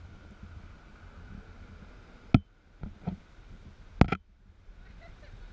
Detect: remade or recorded recorded